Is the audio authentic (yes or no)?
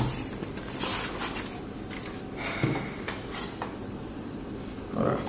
yes